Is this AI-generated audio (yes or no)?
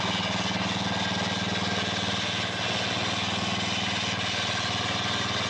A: no